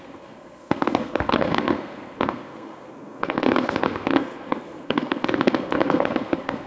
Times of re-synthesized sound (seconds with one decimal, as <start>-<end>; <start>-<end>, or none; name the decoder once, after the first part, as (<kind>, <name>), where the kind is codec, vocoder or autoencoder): 0.0-6.7 (codec, SNAC)